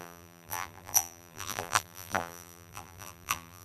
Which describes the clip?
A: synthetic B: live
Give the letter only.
A